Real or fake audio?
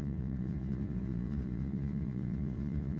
fake